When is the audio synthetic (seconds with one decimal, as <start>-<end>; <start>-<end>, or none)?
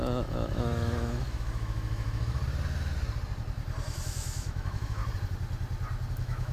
0.0-2.4; 4.0-5.0; 6.1-6.5